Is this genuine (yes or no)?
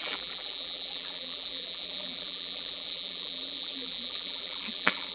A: no